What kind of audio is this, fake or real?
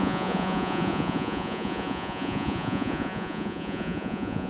fake